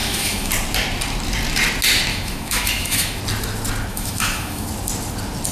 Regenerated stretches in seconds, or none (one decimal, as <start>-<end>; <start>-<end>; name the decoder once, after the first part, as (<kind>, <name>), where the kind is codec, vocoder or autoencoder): 0.0-0.5 (autoencoder, DAC-VAE); 2.1-3.2; 3.9-4.7